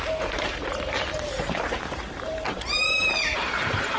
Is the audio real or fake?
fake